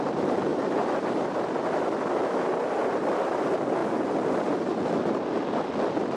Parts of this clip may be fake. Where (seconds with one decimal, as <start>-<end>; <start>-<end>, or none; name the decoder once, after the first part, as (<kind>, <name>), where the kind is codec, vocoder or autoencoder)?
0.5-1.2 (vocoder, BigVGAN v2)